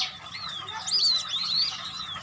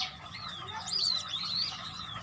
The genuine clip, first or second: first